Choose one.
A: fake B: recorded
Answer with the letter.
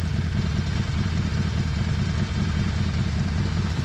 B